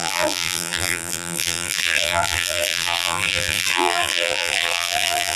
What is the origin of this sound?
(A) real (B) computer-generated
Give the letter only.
B